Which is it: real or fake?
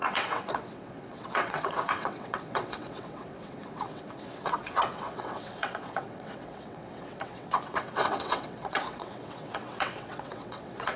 fake